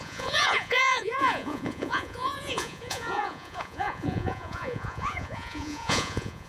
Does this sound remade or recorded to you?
remade